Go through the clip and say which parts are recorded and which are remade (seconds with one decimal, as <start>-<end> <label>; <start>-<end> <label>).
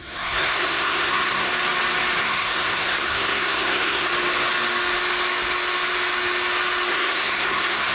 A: 0.0-1.5 remade; 1.5-2.2 recorded; 2.2-4.1 remade; 4.1-6.9 recorded; 6.9-7.9 remade